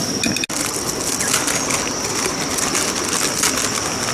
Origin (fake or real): real